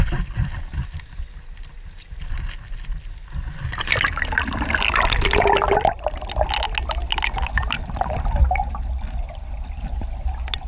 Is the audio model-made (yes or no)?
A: no